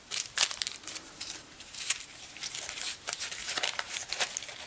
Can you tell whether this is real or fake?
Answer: fake